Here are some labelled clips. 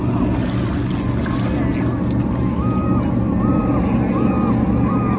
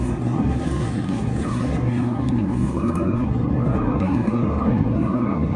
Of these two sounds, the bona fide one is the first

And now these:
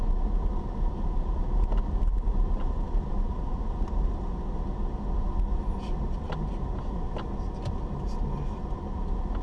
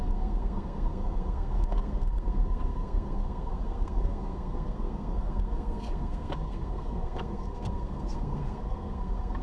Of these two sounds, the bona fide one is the first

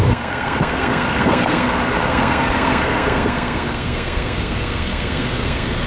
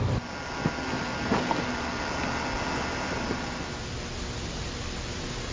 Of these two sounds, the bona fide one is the second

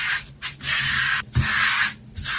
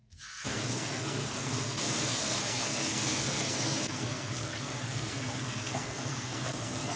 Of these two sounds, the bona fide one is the first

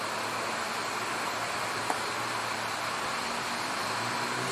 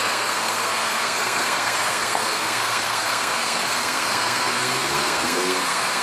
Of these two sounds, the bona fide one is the first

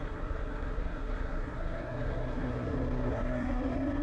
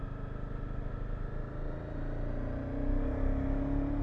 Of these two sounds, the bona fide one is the second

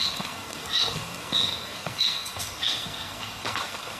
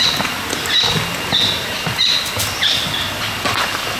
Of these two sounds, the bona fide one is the second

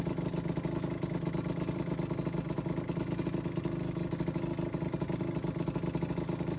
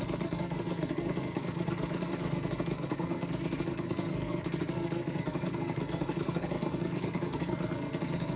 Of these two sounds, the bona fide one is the first